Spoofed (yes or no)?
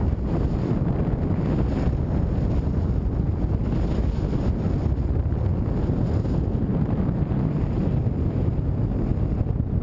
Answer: no